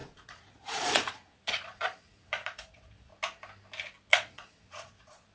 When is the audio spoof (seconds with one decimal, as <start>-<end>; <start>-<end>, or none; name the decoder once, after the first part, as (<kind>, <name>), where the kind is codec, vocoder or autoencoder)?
0.0-3.1 (vocoder, Vocos); 4.1-5.3